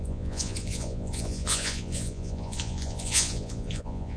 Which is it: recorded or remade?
remade